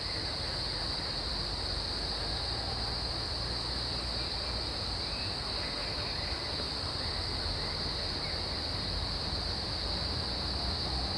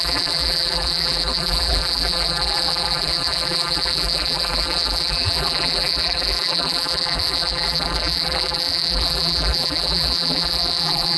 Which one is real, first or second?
first